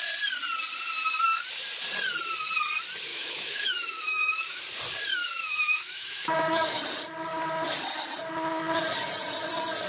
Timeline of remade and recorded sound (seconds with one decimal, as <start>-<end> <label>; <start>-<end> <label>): 0.0-3.1 recorded; 3.1-4.6 remade; 4.6-5.1 recorded; 5.1-6.8 remade; 6.8-9.9 recorded